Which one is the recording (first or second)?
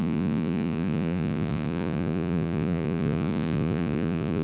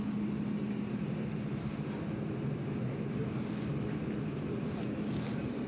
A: second